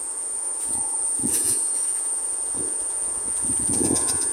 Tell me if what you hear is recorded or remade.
remade